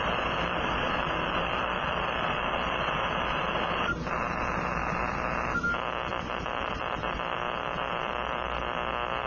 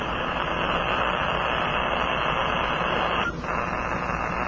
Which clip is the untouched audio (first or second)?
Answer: second